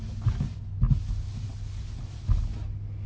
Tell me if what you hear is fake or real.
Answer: real